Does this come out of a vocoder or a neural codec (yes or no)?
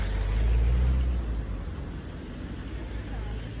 no